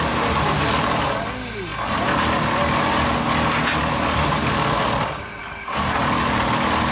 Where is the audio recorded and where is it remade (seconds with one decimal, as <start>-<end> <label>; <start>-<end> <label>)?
0.0-5.4 recorded; 5.4-6.9 remade

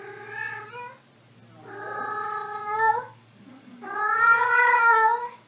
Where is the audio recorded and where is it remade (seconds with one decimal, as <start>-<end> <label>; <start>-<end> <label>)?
0.0-2.6 recorded; 2.6-5.5 remade

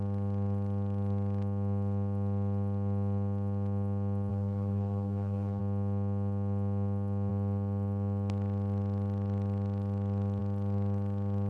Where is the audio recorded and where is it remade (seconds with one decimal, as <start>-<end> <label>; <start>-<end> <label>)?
0.0-4.3 recorded; 4.3-5.6 remade; 5.6-11.5 recorded

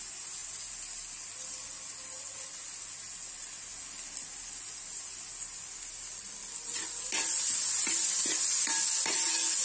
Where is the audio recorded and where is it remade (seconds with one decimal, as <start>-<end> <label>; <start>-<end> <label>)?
0.0-9.6 recorded

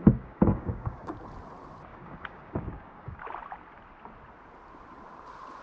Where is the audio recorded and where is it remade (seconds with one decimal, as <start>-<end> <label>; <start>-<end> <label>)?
0.0-1.1 remade; 1.1-1.9 recorded; 1.9-3.2 remade; 3.2-5.6 recorded

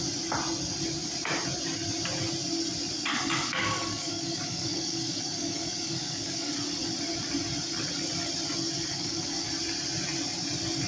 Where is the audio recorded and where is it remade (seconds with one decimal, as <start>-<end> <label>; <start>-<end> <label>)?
0.0-3.1 recorded; 3.1-6.5 remade; 6.5-8.9 recorded; 8.9-9.5 remade; 9.5-10.9 recorded

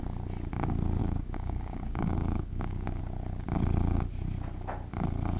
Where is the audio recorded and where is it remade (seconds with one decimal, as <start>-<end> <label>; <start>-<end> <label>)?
0.0-1.0 recorded; 1.0-3.0 remade; 3.0-5.4 recorded

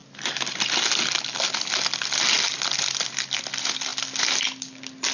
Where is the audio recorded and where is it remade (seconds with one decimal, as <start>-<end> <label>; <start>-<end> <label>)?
0.0-5.1 recorded